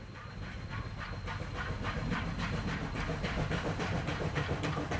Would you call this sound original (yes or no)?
yes